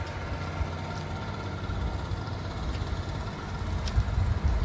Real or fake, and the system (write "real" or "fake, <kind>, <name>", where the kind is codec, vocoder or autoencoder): real